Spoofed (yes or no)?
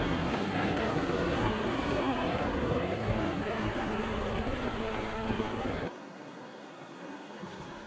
yes